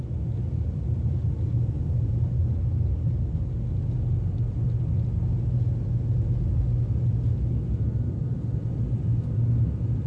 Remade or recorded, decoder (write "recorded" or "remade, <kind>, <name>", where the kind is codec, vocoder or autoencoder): recorded